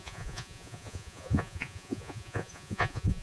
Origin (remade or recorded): remade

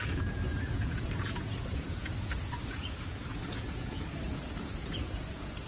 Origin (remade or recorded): remade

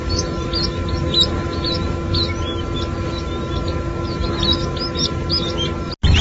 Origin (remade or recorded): recorded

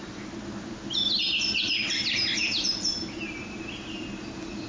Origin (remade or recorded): recorded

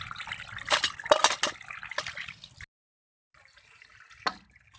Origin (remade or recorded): recorded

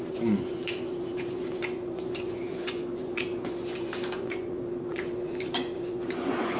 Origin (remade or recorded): remade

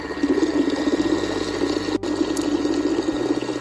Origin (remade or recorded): recorded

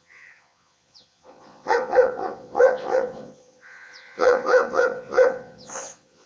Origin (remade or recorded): remade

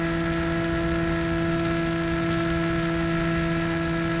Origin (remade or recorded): recorded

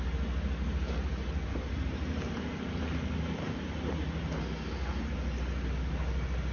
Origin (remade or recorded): recorded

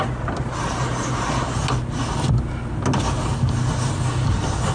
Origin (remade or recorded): recorded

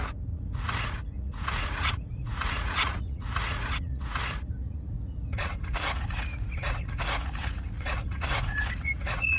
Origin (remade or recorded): remade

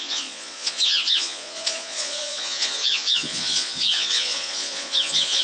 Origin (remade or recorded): remade